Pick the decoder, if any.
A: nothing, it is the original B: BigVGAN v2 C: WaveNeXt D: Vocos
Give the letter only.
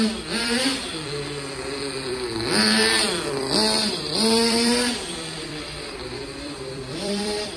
B